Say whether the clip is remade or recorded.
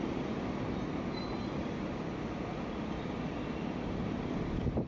recorded